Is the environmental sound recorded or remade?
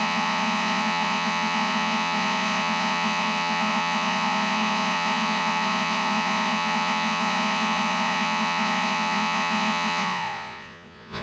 remade